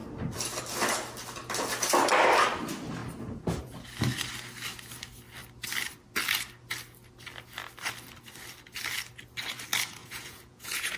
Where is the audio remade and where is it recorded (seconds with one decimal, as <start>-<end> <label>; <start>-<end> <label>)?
0.0-10.0 recorded; 10.0-11.0 remade